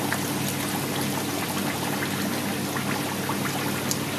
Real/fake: real